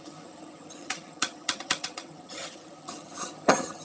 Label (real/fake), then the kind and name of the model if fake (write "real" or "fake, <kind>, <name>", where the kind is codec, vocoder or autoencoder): fake, vocoder, HiFi-GAN